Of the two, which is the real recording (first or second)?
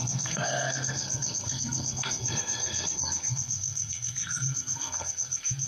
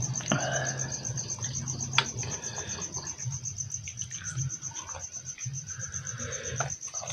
second